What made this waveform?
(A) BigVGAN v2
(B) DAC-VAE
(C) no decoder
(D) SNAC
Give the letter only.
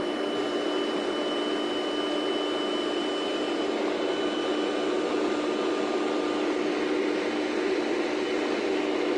C